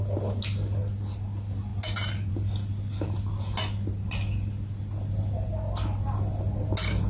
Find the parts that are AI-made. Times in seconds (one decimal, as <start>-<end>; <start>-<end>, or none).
none